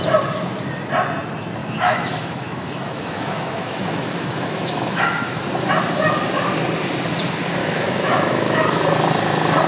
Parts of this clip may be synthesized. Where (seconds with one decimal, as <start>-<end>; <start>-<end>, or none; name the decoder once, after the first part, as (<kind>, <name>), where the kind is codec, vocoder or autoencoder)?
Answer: 1.6-5.4 (autoencoder, DAC-VAE); 7.6-8.8